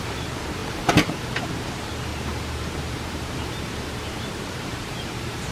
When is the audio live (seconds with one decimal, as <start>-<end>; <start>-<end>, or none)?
0.0-2.1

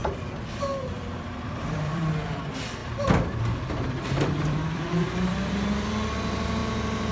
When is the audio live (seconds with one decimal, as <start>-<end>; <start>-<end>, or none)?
2.1-2.8; 5.9-6.6